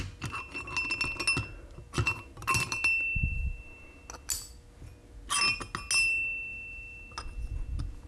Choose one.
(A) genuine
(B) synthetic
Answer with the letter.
A